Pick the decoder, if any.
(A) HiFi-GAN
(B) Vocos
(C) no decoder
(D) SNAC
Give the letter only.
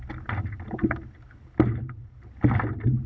C